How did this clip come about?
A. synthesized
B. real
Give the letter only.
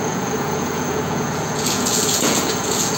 A